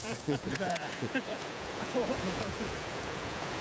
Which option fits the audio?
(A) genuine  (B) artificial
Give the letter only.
B